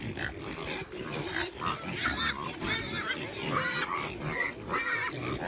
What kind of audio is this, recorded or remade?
recorded